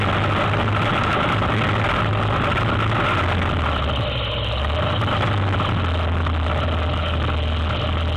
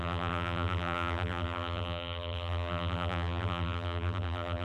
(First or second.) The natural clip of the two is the first